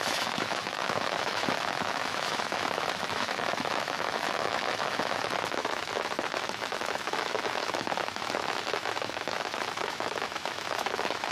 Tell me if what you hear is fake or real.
fake